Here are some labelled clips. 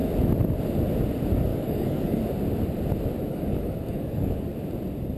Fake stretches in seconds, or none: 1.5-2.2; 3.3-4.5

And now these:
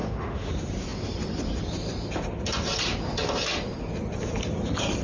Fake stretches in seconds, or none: 0.0-0.5

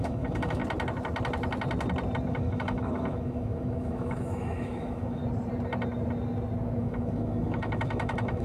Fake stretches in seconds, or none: 0.0-0.6; 2.3-5.2; 6.8-8.4

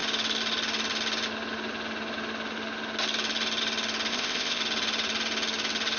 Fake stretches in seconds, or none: 4.1-4.6